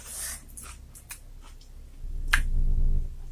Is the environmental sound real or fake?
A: real